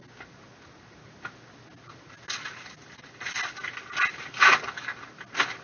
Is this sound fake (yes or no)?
no